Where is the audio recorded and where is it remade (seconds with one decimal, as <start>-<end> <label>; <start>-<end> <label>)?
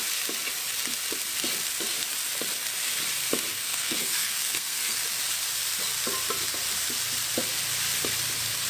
0.0-3.5 recorded; 3.5-5.0 remade; 5.0-8.7 recorded